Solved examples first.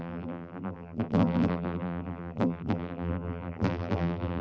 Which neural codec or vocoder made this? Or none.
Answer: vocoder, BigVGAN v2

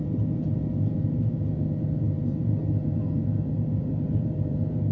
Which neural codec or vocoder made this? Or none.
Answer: vocoder, BigVGAN v2